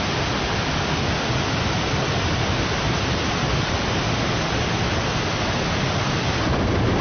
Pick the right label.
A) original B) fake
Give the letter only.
A